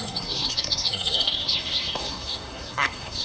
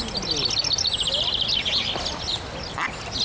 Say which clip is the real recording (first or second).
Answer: second